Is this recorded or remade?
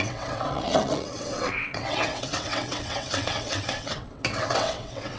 remade